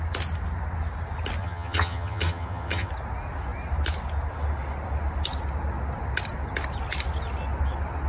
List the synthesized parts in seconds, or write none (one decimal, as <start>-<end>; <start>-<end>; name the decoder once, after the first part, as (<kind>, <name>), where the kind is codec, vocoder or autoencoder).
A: 1.4-2.9 (vocoder, HiFi-GAN)